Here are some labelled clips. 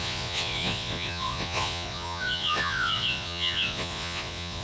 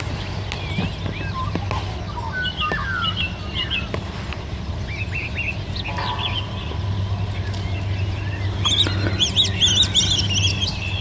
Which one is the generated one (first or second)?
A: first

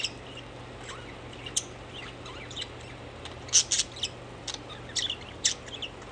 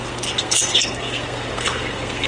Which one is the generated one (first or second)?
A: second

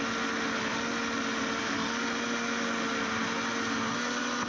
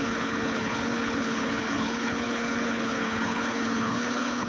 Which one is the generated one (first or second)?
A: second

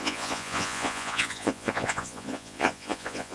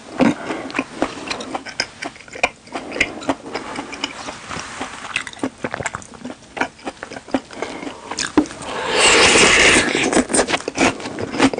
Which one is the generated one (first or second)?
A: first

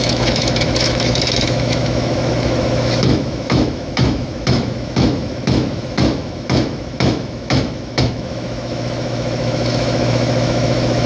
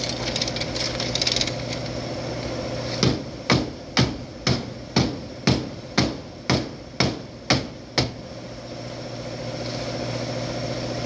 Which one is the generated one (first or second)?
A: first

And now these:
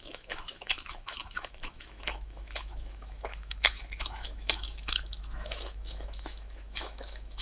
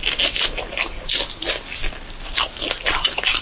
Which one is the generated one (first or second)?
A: first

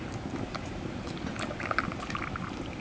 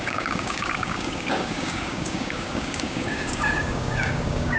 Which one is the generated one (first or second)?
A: second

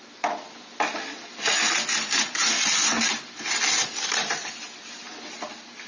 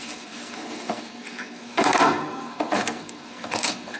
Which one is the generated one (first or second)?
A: second